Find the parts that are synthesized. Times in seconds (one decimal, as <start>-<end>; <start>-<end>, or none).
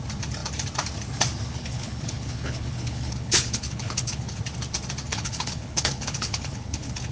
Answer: 1.5-4.4; 5.1-7.1